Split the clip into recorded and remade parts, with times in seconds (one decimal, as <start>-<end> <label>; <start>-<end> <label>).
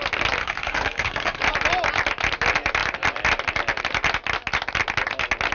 0.0-0.4 recorded; 0.4-1.4 remade; 1.4-5.5 recorded